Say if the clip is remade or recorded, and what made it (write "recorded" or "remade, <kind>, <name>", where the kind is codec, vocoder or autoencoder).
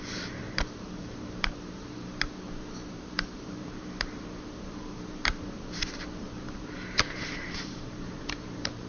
remade, vocoder, BigVGAN v2